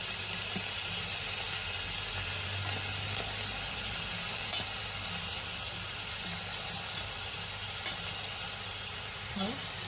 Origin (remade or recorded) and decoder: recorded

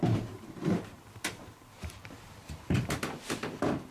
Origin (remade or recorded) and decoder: remade, vocoder, BigVGAN v2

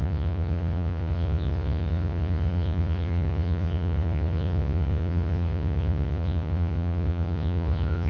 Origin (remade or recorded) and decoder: remade, vocoder, Vocos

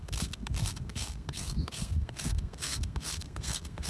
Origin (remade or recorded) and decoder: remade, codec, SNAC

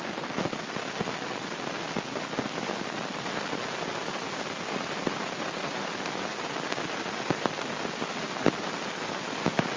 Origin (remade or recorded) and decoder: recorded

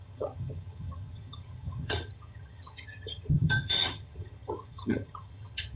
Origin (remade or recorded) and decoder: remade, vocoder, HiFi-GAN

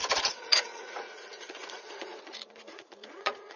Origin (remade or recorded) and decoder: remade, vocoder, Vocos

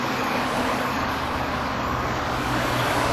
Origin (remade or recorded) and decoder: remade, codec, DAC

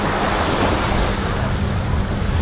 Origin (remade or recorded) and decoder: recorded